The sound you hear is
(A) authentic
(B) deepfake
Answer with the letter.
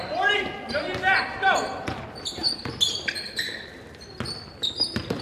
A